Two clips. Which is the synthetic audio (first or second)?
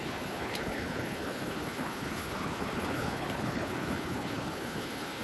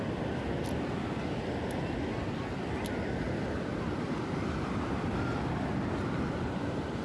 first